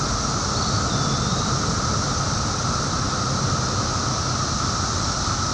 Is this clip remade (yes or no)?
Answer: no